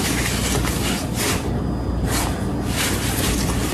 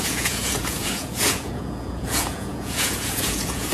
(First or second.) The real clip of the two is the first